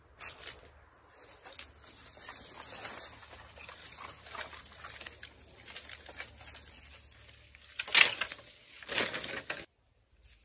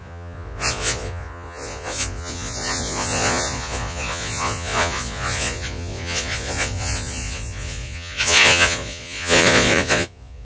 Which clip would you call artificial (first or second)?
second